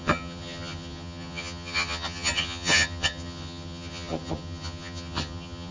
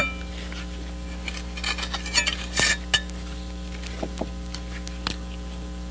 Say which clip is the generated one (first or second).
first